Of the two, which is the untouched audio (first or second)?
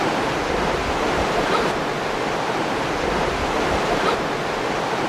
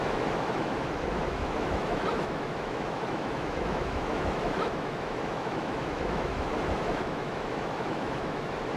first